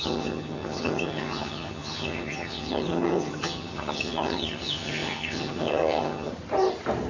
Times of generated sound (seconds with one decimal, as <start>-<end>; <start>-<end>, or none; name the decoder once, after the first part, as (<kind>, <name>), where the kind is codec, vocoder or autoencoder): 0.0-6.3 (vocoder, HiFi-GAN)